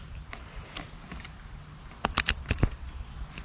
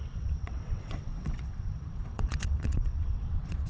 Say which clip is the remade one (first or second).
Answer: second